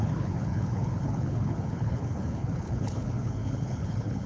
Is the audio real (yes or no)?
no